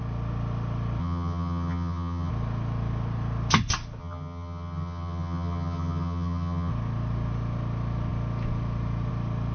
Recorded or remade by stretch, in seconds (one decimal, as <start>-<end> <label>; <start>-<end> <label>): 0.0-1.0 recorded; 1.0-2.3 remade; 2.3-4.0 recorded; 4.0-6.7 remade; 6.7-9.5 recorded